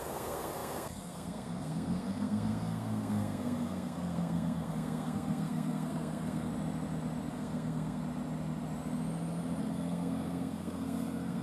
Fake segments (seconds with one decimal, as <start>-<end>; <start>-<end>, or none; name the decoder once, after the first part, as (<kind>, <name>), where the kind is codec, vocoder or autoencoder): 0.0-6.5 (codec, SNAC); 7.3-8.0; 9.6-11.4